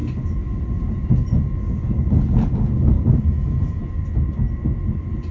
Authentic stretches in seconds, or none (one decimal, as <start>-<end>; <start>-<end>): 0.0-3.2; 3.8-5.3